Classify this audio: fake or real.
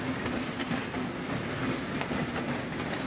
real